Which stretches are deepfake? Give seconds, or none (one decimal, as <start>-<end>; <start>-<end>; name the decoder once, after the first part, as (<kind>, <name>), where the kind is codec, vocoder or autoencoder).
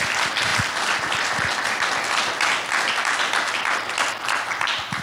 none